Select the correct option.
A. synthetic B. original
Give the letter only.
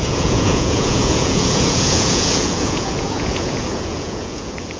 A